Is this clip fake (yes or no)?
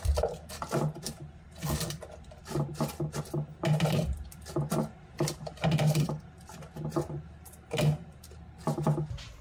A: no